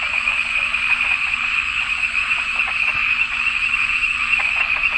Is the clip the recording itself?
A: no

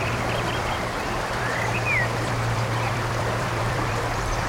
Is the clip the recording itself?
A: no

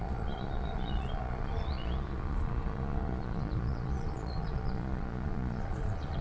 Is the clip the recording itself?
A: no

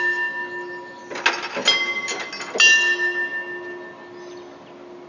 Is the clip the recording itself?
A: yes